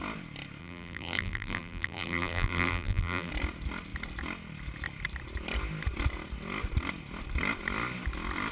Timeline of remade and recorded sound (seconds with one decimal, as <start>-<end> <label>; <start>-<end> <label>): 0.0-0.6 recorded; 0.6-3.3 remade; 3.3-8.5 recorded